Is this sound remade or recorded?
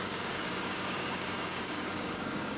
remade